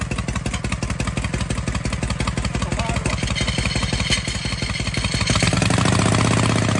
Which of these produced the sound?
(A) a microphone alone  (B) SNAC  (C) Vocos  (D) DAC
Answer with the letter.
A